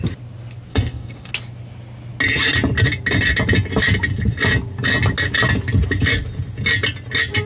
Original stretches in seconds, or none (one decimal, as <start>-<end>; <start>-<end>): 0.0-0.7; 1.3-7.5